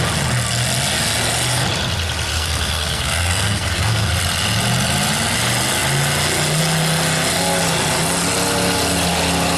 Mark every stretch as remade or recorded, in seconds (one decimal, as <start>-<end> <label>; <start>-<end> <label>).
0.0-2.3 recorded; 2.3-4.1 remade; 4.1-9.6 recorded